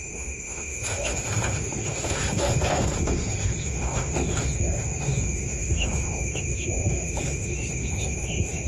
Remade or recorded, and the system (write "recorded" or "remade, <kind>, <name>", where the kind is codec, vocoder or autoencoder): remade, autoencoder, DAC-VAE